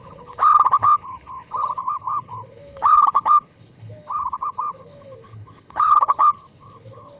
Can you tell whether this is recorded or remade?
remade